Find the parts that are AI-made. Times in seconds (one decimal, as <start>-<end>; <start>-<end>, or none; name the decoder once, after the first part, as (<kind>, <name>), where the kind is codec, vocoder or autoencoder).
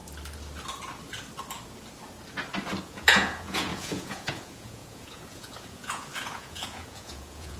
2.8-7.6 (vocoder, Vocos)